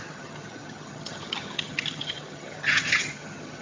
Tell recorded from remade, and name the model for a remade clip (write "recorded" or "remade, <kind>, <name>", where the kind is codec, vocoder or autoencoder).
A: remade, vocoder, HiFi-GAN